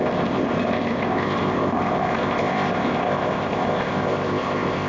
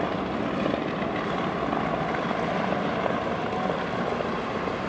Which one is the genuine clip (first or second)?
second